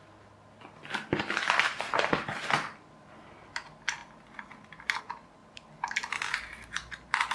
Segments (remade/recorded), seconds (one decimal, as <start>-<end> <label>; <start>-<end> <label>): 0.0-4.0 recorded; 4.0-5.0 remade; 5.0-5.4 recorded; 5.4-7.3 remade